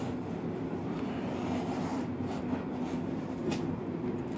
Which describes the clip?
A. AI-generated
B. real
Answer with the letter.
B